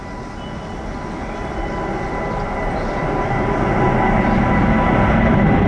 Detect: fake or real real